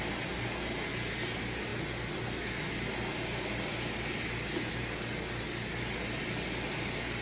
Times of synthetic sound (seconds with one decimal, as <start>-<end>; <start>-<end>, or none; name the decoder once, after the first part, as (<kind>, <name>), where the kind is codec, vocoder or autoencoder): none